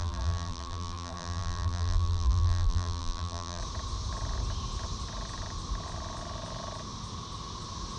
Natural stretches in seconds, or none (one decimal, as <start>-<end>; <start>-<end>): 3.6-8.0

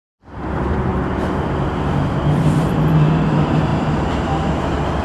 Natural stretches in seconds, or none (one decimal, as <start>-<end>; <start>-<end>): 3.7-4.5

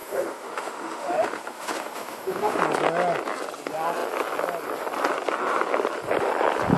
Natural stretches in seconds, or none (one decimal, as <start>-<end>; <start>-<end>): 2.6-6.8

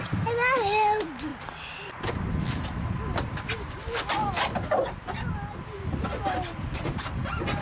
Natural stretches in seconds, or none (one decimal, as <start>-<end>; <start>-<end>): 0.0-7.6

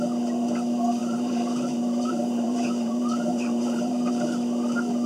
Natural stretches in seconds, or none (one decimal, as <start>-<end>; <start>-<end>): 0.0-1.0; 4.1-5.1